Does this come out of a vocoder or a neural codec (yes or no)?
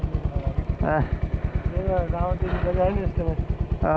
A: no